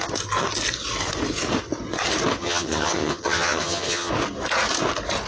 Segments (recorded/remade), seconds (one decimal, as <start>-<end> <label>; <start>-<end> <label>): 0.0-2.4 recorded; 2.4-4.1 remade; 4.1-5.3 recorded